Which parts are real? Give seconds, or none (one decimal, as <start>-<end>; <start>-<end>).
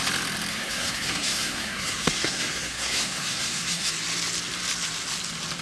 0.0-0.5; 3.9-5.6